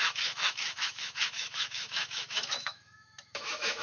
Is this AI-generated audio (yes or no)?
yes